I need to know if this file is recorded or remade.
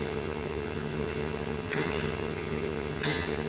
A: remade